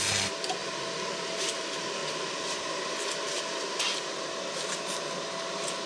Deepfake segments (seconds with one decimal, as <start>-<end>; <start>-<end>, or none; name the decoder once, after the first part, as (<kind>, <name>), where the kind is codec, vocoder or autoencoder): none